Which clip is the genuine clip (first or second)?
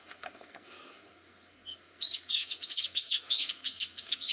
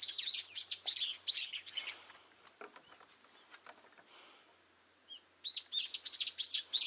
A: second